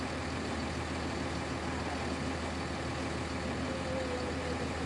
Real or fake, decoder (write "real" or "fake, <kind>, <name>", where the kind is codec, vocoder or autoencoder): real